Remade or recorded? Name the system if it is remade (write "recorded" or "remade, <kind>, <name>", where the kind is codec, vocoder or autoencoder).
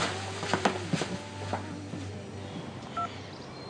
recorded